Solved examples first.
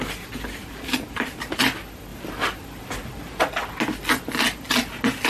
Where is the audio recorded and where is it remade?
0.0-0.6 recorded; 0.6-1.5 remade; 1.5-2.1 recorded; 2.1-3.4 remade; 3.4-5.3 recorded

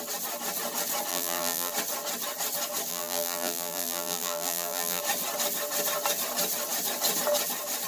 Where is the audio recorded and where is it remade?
0.0-1.1 recorded; 1.1-1.7 remade; 1.7-2.9 recorded; 2.9-5.0 remade; 5.0-7.9 recorded

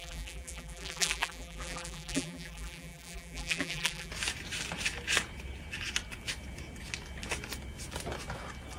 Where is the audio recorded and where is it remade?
0.0-4.1 remade; 4.1-8.8 recorded

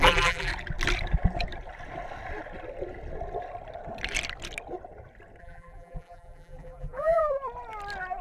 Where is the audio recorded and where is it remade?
0.0-0.5 remade; 0.5-5.4 recorded; 5.4-7.2 remade; 7.2-8.2 recorded